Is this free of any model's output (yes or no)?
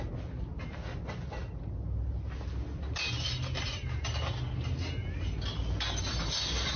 yes